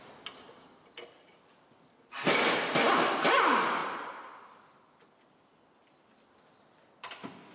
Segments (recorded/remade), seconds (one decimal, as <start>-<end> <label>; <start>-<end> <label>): 0.0-7.5 recorded